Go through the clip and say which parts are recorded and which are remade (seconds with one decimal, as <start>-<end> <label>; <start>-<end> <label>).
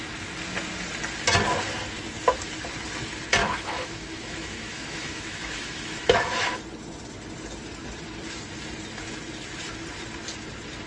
0.0-3.4 recorded; 3.4-6.6 remade; 6.6-10.9 recorded